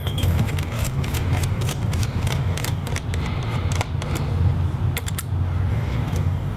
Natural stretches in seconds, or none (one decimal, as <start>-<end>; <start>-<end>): 2.9-5.7